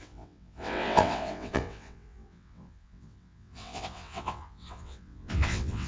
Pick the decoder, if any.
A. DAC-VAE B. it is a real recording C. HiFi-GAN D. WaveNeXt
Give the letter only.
D